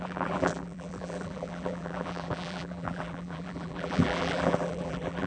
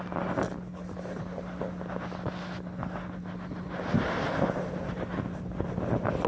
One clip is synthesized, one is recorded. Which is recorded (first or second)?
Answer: second